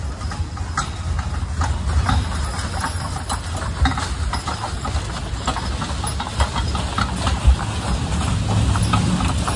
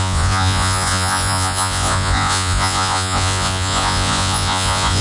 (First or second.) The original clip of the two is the first